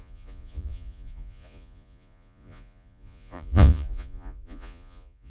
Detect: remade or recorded remade